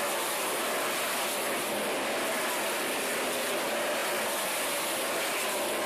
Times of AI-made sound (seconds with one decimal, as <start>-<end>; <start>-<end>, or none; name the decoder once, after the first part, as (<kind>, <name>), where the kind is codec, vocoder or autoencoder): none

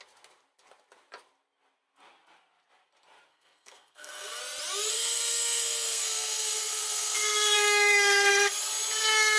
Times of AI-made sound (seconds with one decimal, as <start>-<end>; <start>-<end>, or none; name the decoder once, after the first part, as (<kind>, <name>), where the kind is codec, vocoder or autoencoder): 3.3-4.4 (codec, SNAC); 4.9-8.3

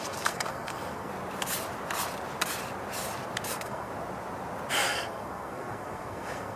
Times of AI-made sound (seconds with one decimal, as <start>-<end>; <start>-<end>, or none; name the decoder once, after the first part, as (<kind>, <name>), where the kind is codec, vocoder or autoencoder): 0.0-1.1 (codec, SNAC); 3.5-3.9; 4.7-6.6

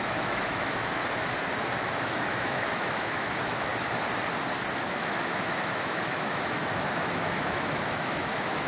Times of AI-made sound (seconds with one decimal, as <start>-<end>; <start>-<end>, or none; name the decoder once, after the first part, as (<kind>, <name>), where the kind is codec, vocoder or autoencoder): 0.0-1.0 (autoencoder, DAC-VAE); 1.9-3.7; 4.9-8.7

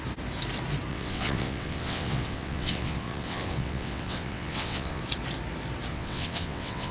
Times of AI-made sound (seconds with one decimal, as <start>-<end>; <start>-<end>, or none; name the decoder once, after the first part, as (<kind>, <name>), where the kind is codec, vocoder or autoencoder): 0.9-5.0 (vocoder, WaveNeXt); 5.9-6.9

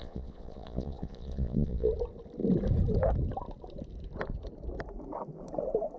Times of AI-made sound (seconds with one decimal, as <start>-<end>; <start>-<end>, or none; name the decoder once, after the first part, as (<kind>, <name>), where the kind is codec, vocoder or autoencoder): 0.0-1.9 (vocoder, Vocos)

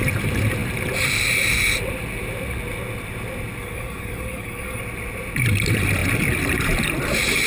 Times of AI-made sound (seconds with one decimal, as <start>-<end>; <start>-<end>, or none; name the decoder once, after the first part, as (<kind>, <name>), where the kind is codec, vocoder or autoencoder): 3.6-4.8 (codec, DAC)

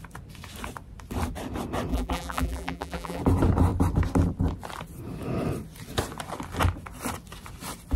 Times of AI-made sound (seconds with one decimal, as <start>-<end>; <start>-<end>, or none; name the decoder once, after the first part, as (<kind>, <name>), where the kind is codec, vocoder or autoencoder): 1.9-3.2 (vocoder, BigVGAN v2)